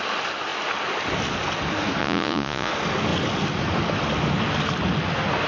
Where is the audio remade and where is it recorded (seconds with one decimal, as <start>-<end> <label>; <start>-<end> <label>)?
0.0-2.0 recorded; 2.0-2.7 remade; 2.7-5.5 recorded